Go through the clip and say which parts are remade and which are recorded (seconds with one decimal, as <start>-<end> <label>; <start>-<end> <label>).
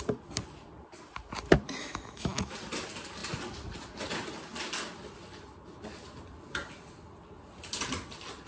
0.0-1.8 recorded; 1.8-2.5 remade; 2.5-8.5 recorded